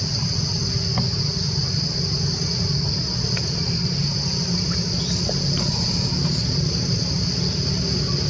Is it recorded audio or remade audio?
recorded